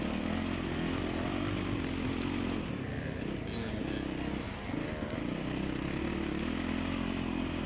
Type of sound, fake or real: real